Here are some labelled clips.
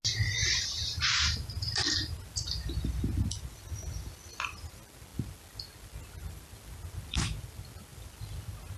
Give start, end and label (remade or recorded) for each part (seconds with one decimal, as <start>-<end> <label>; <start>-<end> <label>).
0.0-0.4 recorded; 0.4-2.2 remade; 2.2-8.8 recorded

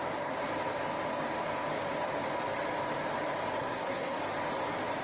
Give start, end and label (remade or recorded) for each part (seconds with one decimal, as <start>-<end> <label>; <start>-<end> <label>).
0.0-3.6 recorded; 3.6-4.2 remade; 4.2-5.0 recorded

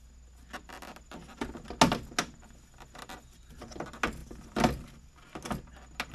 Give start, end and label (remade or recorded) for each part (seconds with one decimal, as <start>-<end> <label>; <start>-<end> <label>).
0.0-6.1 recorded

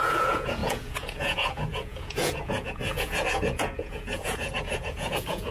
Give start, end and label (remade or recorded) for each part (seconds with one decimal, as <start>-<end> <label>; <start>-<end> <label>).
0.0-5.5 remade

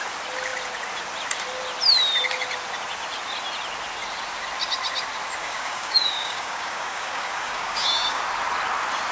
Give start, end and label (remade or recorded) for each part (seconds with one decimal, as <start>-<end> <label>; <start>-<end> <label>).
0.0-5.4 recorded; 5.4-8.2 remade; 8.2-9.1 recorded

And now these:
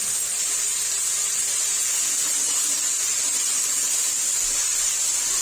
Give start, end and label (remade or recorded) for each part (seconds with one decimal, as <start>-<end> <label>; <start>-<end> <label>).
0.0-5.4 recorded

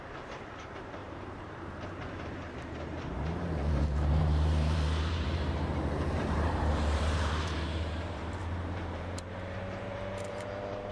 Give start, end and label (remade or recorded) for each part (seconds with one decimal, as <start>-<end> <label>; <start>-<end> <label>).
0.0-10.9 remade

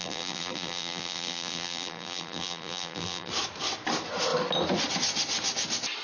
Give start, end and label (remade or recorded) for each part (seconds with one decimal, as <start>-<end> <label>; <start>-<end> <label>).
0.0-3.3 remade; 3.3-6.0 recorded